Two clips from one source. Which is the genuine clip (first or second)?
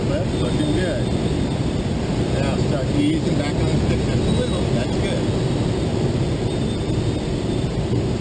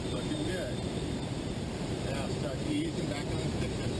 first